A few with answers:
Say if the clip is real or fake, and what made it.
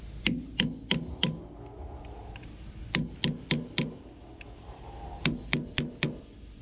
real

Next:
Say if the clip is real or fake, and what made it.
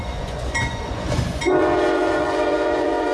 fake, vocoder, Vocos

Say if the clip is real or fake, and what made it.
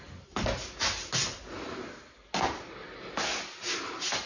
real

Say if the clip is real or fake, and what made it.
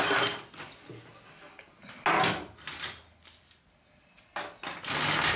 real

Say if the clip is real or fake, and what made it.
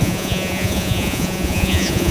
fake, vocoder, Vocos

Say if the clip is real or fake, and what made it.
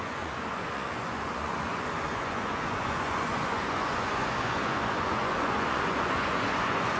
fake, vocoder, Vocos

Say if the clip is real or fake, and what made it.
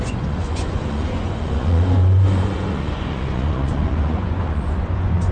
fake, vocoder, Vocos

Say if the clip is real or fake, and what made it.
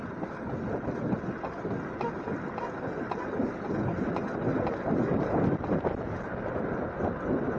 real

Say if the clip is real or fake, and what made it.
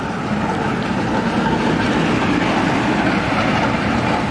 real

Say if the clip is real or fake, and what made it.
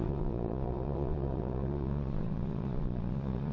fake, vocoder, Vocos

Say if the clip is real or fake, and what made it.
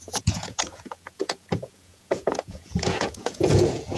fake, vocoder, Vocos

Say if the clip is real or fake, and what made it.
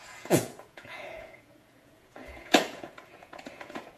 fake, vocoder, Vocos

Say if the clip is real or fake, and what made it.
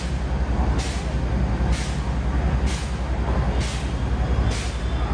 real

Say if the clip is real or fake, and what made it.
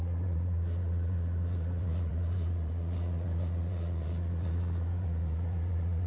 fake, vocoder, Vocos